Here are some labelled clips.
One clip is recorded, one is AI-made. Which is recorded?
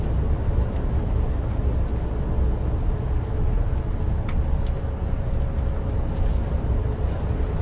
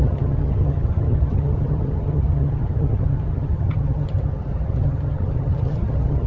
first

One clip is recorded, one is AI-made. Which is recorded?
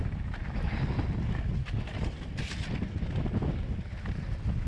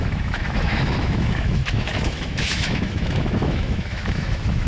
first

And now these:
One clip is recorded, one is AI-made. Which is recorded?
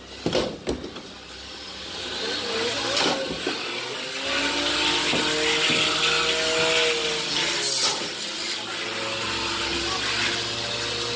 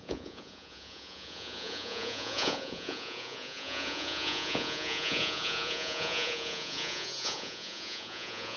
first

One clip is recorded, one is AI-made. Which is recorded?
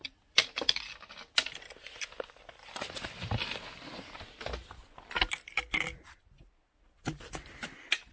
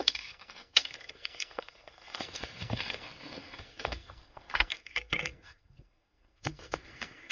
first